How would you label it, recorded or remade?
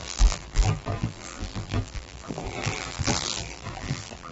remade